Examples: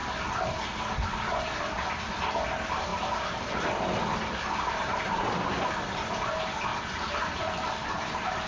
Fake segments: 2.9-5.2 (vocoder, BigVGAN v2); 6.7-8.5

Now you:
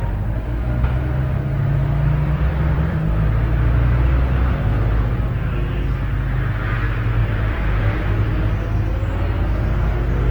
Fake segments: 1.8-4.7 (vocoder, BigVGAN v2); 7.2-7.8

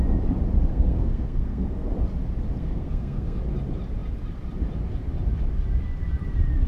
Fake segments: 0.7-1.9 (codec, SNAC); 2.6-3.4

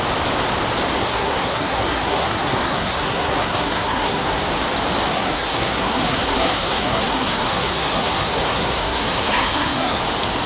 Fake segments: 1.0-4.4 (codec, SNAC); 5.1-10.0

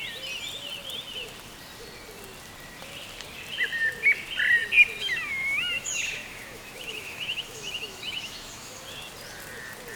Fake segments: 5.0-8.8 (autoencoder, DAC-VAE)

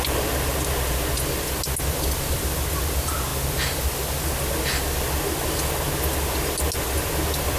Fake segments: none

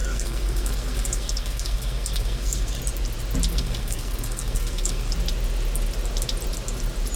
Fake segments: 0.0-2.8 (codec, SNAC); 3.5-5.1

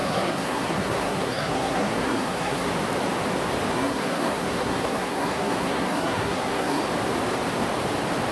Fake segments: 0.0-2.7 (codec, SNAC); 3.7-6.8